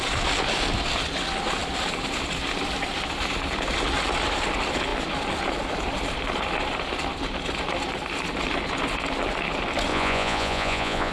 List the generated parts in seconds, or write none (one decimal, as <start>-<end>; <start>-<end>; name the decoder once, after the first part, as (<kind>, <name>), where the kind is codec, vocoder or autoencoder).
9.9-11.1 (vocoder, Vocos)